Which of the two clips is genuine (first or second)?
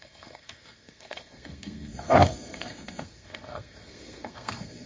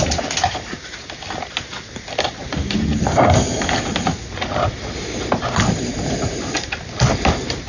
second